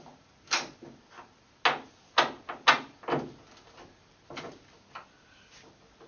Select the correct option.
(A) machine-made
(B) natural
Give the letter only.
B